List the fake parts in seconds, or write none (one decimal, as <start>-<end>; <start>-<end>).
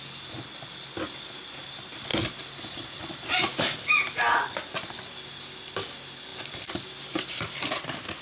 none